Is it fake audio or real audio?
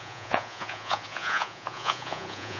fake